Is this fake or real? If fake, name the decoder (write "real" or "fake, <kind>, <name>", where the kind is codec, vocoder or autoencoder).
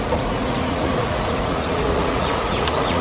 fake, vocoder, Vocos